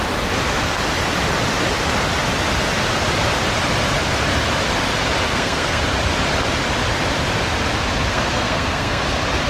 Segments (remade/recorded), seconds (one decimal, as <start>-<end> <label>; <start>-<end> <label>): 0.0-5.3 recorded; 5.3-5.8 remade; 5.8-8.1 recorded; 8.1-9.0 remade; 9.0-9.5 recorded